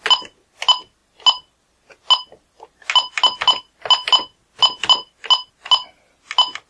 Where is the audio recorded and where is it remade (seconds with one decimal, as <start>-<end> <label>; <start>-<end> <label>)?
0.0-6.7 recorded